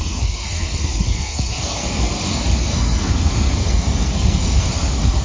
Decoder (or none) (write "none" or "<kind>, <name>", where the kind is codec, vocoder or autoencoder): codec, SNAC